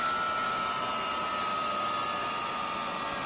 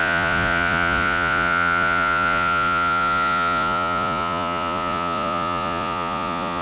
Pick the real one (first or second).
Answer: first